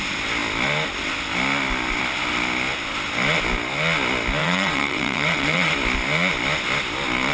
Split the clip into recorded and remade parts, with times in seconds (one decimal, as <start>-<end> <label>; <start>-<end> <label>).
0.0-4.4 recorded; 4.4-5.7 remade; 5.7-7.3 recorded